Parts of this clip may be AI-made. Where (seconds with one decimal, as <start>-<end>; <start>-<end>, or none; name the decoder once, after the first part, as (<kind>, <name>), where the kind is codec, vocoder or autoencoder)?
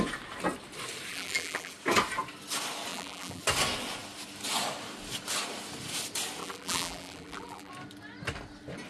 1.1-1.7 (vocoder, BigVGAN v2); 2.9-3.4; 6.4-7.7